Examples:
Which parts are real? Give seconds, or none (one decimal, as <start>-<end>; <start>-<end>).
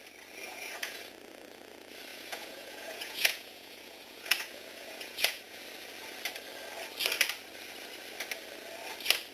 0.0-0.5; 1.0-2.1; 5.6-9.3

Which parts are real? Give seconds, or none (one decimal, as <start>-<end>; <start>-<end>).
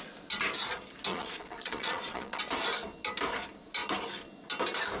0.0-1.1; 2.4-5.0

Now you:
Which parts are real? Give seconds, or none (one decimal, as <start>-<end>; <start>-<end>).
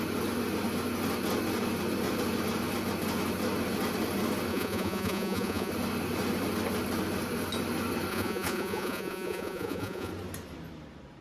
0.0-4.5; 5.7-8.1; 10.1-11.2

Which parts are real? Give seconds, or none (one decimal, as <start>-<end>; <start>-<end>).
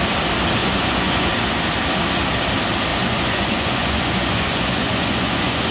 0.0-0.6; 1.3-2.9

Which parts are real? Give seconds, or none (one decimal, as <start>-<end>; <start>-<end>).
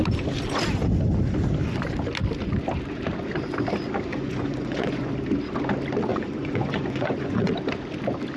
0.0-4.1; 5.1-6.1; 7.5-8.4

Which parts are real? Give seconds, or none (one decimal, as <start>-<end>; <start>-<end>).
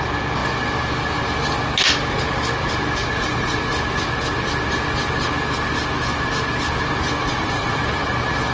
0.0-3.0; 3.6-7.2; 7.8-8.5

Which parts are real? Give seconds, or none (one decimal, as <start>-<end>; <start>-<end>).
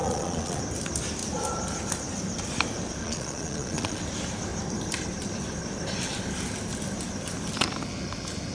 0.6-3.0; 4.0-8.5